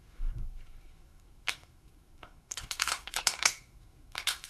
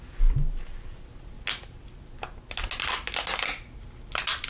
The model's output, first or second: first